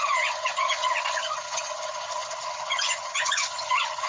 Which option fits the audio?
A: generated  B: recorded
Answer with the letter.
A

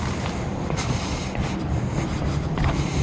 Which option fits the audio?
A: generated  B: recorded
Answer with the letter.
B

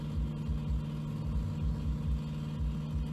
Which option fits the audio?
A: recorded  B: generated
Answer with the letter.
A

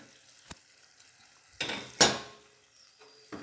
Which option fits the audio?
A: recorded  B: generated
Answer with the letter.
A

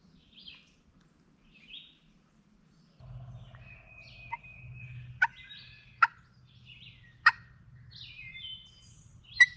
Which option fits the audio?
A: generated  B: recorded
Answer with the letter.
B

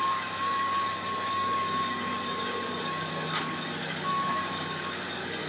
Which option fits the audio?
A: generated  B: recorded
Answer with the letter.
A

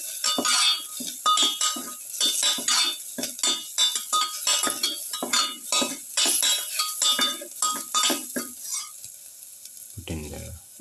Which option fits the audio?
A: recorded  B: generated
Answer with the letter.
A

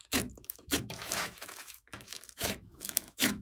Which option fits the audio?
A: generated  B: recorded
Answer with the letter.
A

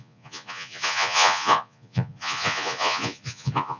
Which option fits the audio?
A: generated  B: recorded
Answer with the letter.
A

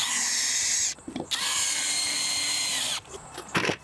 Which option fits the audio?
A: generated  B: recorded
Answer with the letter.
B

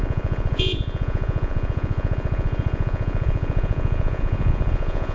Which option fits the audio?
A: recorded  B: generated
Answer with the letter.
B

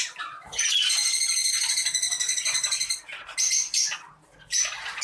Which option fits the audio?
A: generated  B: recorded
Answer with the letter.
B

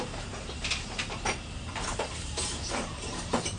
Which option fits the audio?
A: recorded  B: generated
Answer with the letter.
B